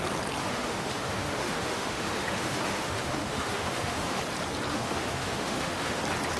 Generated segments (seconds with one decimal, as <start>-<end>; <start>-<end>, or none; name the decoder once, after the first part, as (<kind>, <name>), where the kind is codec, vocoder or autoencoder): 0.4-4.2 (autoencoder, DAC-VAE); 4.7-6.0